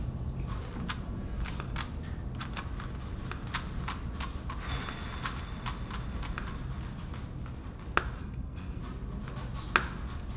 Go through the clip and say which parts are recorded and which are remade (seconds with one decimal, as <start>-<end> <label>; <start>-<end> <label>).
0.0-8.2 recorded; 8.2-8.8 remade; 8.8-10.4 recorded